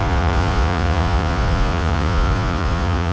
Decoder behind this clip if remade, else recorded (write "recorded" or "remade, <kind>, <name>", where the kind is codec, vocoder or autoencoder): remade, vocoder, Vocos